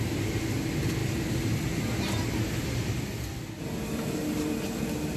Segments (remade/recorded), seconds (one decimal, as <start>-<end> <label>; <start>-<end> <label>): 0.0-1.0 recorded; 1.0-1.8 remade; 1.8-5.2 recorded